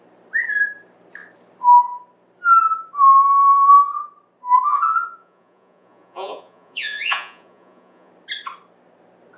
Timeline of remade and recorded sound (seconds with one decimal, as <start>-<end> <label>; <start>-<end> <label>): 0.0-4.7 recorded; 4.7-8.1 remade; 8.1-9.4 recorded